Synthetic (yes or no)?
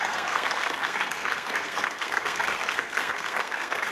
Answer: yes